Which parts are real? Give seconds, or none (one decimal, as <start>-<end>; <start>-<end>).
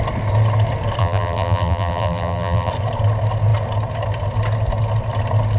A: 0.0-1.0; 2.7-5.6